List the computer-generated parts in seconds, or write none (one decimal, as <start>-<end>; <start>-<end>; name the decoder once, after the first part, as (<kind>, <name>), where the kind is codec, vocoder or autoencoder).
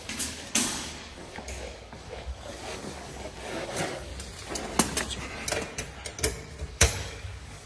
0.0-4.1 (codec, DAC); 6.7-7.7